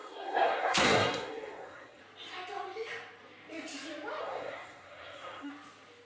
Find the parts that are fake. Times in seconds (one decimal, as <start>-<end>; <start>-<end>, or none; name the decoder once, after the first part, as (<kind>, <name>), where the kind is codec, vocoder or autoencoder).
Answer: 0.0-2.0 (codec, SNAC); 4.2-5.5